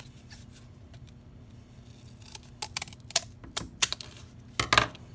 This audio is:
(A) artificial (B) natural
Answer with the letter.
B